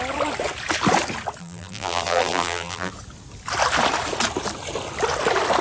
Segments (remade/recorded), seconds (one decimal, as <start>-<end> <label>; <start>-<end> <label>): 0.0-1.4 recorded; 1.4-2.9 remade; 2.9-5.6 recorded